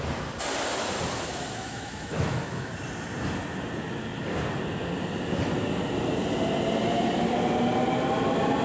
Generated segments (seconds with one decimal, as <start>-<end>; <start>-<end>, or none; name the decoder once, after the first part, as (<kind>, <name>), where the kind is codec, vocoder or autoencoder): 1.3-2.7 (autoencoder, DAC-VAE)